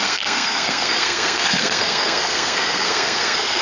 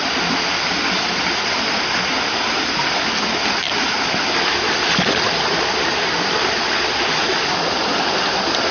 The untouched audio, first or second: second